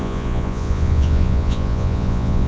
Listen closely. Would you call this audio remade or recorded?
remade